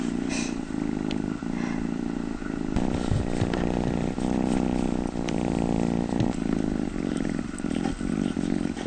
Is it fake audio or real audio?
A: real